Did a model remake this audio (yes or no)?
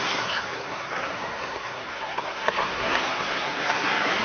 yes